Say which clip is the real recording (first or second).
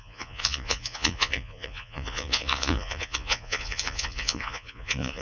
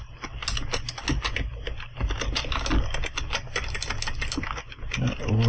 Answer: second